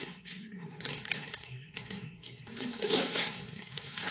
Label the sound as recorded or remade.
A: remade